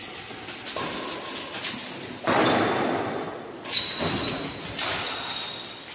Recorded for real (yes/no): yes